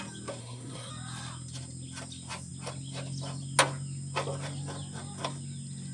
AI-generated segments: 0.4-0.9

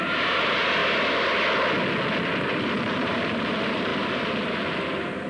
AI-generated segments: 0.0-0.8; 2.4-5.3

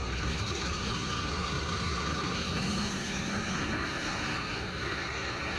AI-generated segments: 0.0-5.6

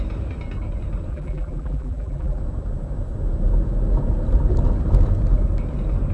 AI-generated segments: 1.1-2.4

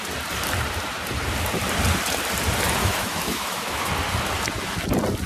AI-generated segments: 2.8-3.9